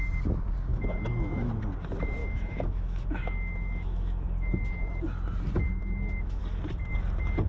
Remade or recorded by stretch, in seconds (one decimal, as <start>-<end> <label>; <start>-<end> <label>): 0.0-0.7 recorded; 0.7-1.5 remade; 1.5-2.2 recorded; 2.2-4.9 remade; 4.9-5.8 recorded; 5.8-6.4 remade; 6.4-7.5 recorded